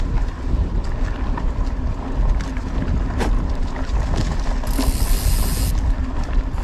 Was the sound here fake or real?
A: real